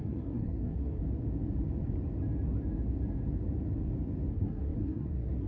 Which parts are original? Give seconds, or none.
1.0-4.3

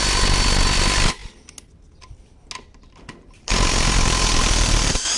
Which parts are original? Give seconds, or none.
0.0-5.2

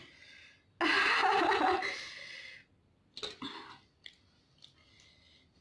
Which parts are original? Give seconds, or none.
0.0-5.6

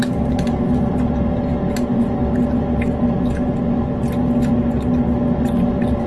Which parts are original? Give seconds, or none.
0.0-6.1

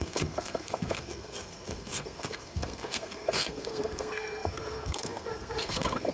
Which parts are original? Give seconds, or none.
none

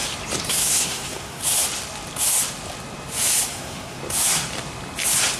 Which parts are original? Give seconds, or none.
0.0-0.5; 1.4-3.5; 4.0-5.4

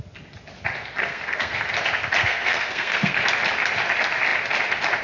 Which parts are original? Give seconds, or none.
0.0-1.0; 1.7-2.2; 3.2-5.0

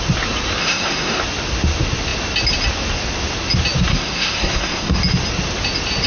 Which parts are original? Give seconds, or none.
0.0-0.6; 1.2-3.9; 5.0-6.1